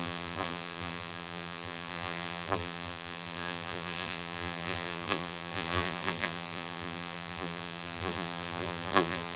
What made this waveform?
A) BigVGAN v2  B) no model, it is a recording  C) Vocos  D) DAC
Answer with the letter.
A